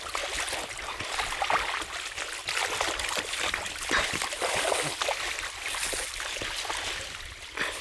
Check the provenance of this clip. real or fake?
real